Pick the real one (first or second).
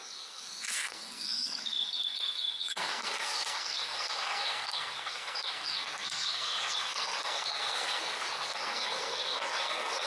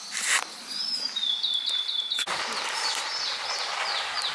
second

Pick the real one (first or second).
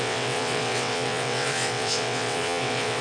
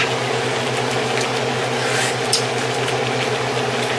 second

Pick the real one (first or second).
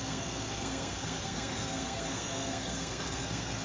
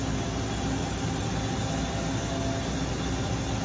second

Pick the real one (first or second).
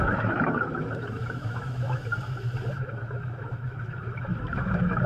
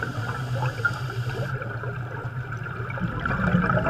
second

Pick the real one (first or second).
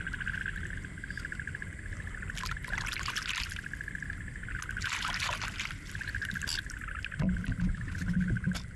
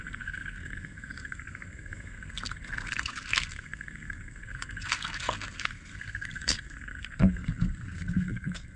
first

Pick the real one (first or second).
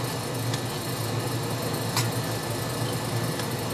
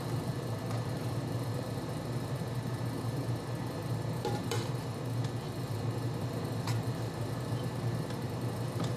first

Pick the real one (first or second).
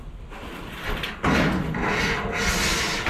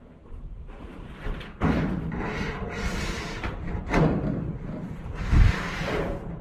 first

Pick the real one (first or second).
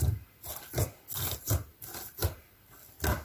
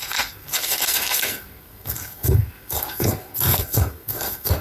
first